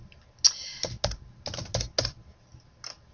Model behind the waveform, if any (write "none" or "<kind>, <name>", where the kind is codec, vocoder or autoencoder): none